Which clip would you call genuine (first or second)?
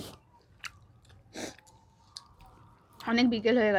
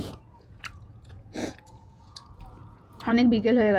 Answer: first